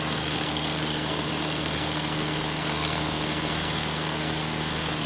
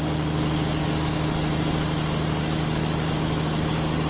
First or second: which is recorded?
second